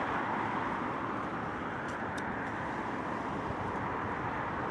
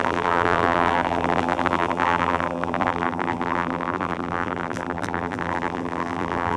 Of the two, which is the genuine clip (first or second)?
first